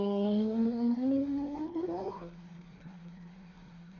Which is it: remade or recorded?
remade